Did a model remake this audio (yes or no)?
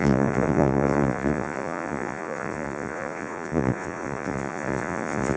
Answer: yes